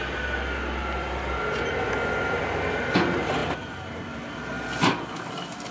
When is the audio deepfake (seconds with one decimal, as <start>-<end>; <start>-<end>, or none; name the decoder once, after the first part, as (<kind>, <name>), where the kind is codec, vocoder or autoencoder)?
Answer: none